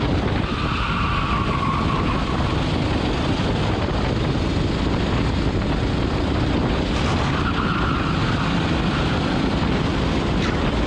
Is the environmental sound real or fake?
real